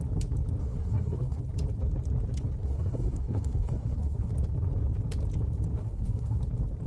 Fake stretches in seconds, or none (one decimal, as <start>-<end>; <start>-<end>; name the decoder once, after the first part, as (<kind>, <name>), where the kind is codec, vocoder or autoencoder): 0.6-1.4 (codec, SNAC); 2.6-4.3; 5.8-6.4